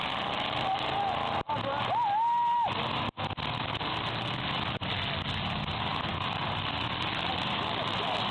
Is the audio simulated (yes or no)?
no